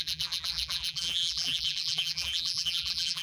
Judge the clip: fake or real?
fake